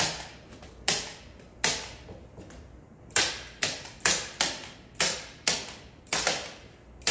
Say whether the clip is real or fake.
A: real